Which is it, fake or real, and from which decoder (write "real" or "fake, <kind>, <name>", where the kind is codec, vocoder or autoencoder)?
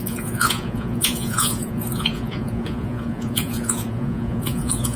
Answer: fake, vocoder, Vocos